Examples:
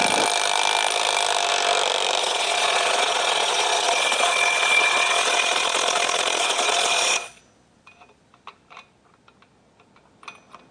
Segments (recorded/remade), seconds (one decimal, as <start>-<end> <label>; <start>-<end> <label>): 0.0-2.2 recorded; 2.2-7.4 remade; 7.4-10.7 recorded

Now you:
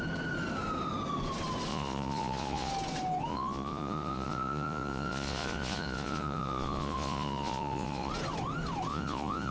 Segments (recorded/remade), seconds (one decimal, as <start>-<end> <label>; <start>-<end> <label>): 0.0-1.7 recorded; 1.7-2.7 remade; 2.7-3.3 recorded; 3.3-8.1 remade; 8.1-8.9 recorded; 8.9-9.5 remade

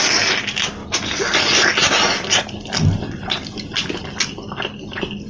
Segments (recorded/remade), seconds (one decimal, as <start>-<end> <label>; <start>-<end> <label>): 0.0-5.3 recorded

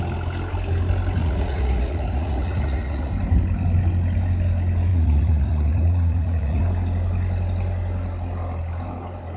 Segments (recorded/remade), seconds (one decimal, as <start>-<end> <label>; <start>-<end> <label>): 0.0-1.2 recorded; 1.2-3.1 remade; 3.1-4.9 recorded; 4.9-6.6 remade; 6.6-9.4 recorded

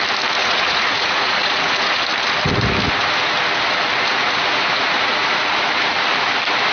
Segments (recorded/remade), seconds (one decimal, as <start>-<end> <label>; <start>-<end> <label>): 0.0-0.4 recorded; 0.4-2.0 remade; 2.0-4.1 recorded; 4.1-5.5 remade; 5.5-6.7 recorded

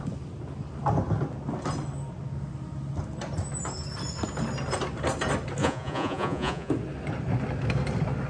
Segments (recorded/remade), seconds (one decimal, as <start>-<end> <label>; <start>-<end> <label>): 0.0-5.6 recorded; 5.6-6.7 remade; 6.7-8.3 recorded

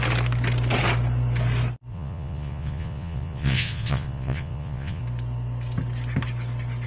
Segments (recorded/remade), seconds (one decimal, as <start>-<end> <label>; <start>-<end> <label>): 0.0-1.9 recorded; 1.9-5.0 remade; 5.0-6.9 recorded